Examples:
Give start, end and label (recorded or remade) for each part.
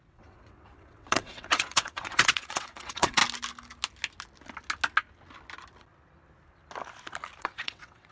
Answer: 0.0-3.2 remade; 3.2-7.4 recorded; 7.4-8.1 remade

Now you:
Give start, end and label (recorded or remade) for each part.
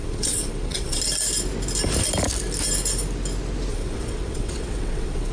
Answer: 0.0-1.0 remade; 1.0-3.7 recorded; 3.7-5.3 remade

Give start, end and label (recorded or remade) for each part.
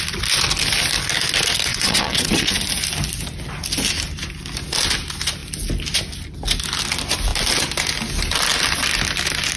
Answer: 0.0-1.7 recorded; 1.7-2.5 remade; 2.5-9.6 recorded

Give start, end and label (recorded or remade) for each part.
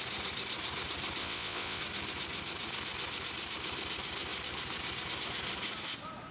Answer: 0.0-1.2 recorded; 1.2-1.8 remade; 1.8-6.3 recorded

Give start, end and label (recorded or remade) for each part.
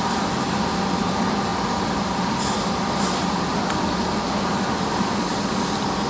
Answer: 0.0-6.1 recorded